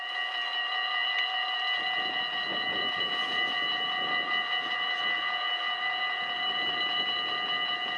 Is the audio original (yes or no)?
yes